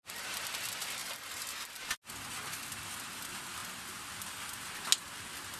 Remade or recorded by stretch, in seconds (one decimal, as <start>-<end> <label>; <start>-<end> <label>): 0.0-5.6 recorded